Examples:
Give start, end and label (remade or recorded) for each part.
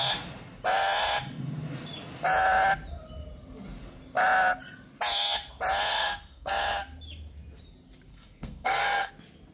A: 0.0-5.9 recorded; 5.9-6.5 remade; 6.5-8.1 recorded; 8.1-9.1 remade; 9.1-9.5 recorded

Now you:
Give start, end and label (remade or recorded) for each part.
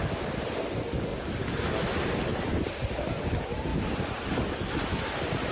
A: 0.0-5.5 recorded